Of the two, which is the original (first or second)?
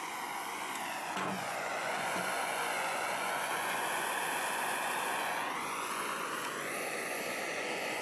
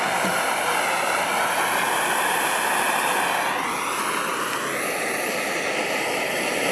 second